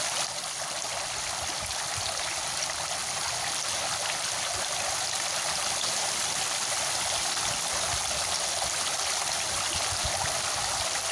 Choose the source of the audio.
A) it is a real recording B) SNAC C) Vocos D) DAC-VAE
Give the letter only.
A